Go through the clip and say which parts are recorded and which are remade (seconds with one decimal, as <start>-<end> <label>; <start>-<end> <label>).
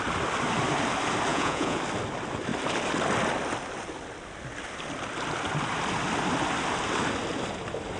0.0-1.3 recorded; 1.3-1.8 remade; 1.8-8.0 recorded